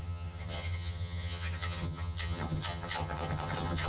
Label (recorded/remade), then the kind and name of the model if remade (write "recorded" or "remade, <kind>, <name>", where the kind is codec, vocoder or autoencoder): remade, vocoder, HiFi-GAN